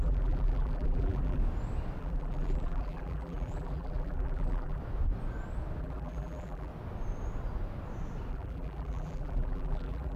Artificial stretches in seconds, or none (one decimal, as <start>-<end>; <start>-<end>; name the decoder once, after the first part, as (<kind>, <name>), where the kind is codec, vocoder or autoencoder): 0.0-1.4 (vocoder, BigVGAN v2); 2.0-4.8; 5.8-6.7; 8.3-10.2